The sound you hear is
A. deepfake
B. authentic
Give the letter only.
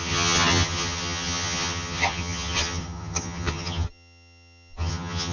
A